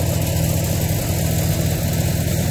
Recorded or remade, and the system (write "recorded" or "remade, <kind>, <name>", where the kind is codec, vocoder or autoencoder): recorded